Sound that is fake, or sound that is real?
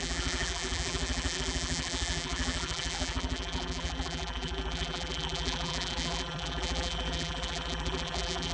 fake